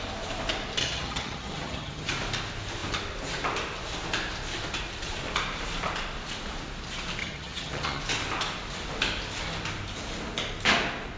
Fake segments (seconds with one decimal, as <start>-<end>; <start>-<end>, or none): 0.8-2.1; 7.2-8.0